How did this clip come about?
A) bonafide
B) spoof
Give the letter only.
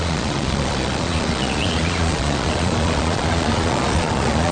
B